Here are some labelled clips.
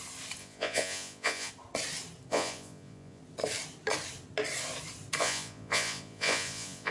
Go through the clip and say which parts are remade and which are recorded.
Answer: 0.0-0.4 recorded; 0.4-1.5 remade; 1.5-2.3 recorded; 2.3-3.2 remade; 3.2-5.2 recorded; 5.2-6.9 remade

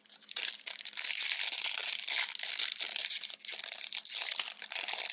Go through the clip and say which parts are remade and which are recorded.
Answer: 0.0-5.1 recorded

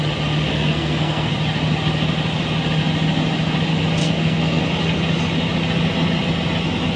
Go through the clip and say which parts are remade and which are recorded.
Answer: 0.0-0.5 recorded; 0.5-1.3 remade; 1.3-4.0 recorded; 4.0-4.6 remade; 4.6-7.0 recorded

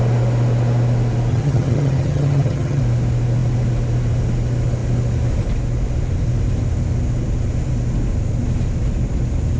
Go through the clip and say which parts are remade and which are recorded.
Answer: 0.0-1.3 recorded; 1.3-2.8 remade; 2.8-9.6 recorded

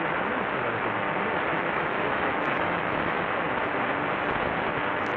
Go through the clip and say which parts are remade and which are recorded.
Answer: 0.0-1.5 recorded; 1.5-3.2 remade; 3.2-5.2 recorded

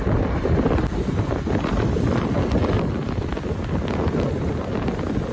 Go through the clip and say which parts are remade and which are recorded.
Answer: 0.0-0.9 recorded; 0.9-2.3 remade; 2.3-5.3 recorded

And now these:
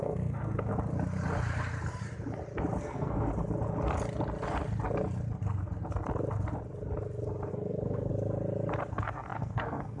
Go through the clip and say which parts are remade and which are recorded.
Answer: 0.0-0.7 remade; 0.7-2.8 recorded; 2.8-3.3 remade; 3.3-7.5 recorded; 7.5-8.1 remade; 8.1-8.9 recorded; 8.9-10.0 remade

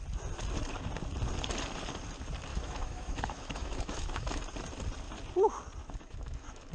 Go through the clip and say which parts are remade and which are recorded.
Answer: 0.0-2.5 recorded; 2.5-4.4 remade; 4.4-5.8 recorded; 5.8-6.7 remade